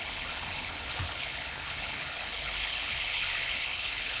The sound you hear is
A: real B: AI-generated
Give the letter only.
B